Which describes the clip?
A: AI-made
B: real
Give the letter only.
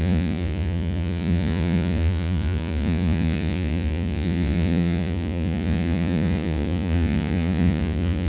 A